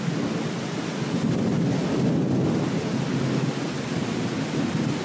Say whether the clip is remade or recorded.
recorded